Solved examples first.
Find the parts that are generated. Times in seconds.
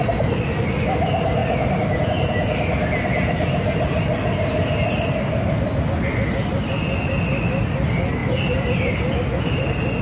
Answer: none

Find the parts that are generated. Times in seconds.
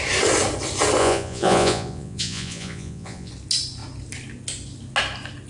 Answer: 1.0-3.3 (vocoder, Vocos)